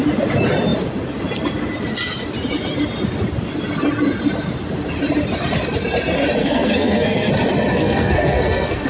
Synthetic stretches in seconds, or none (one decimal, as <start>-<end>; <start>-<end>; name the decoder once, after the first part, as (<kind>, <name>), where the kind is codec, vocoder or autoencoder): 6.4-7.3 (codec, SNAC); 7.7-8.9